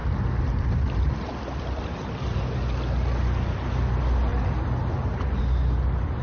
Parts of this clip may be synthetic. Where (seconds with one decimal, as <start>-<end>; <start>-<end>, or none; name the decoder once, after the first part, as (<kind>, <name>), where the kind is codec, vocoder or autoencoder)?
0.0-2.4 (vocoder, BigVGAN v2); 4.3-5.4